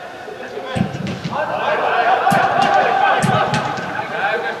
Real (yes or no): yes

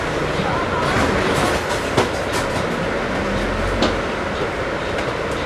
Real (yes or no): no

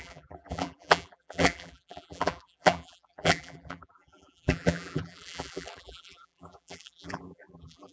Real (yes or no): no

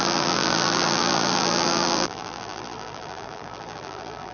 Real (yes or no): no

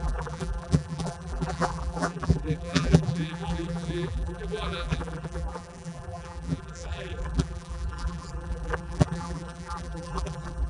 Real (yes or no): no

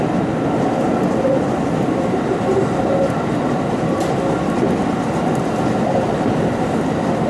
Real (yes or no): yes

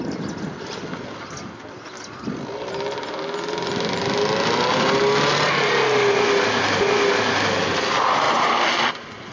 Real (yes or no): yes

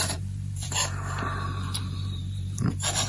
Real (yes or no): no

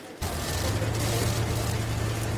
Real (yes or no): yes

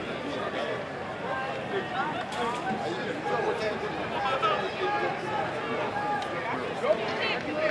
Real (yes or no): yes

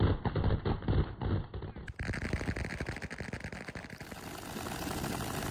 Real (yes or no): yes